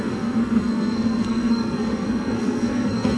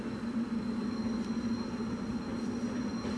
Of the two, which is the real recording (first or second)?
second